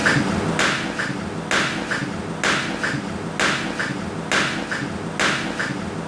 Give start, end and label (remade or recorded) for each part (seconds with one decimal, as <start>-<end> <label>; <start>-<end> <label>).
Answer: 0.0-6.1 recorded